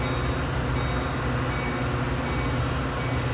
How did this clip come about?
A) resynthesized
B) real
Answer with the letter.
B